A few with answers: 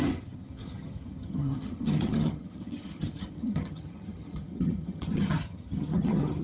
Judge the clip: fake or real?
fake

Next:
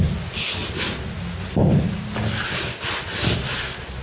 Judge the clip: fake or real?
real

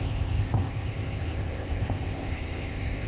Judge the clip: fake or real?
fake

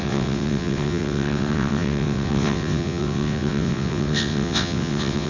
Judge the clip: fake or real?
fake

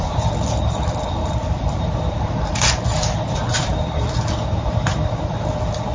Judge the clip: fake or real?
fake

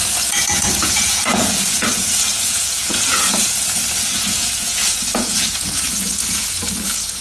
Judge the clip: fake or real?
fake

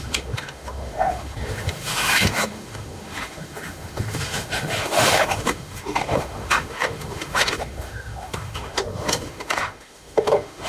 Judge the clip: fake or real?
fake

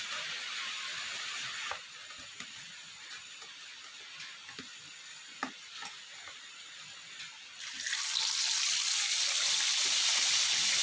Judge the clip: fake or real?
real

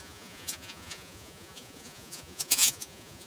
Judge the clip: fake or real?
fake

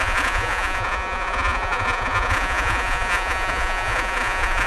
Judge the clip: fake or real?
fake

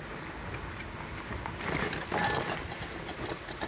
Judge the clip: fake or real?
real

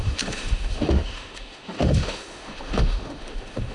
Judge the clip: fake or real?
fake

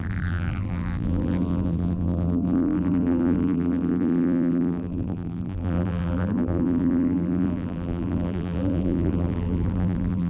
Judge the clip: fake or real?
fake